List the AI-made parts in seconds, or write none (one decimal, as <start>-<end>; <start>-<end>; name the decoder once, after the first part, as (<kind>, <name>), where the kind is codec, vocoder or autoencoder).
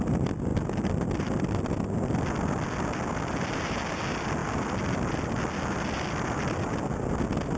none